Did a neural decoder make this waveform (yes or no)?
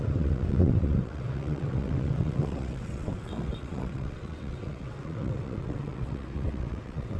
yes